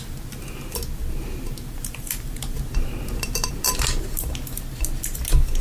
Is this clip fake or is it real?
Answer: real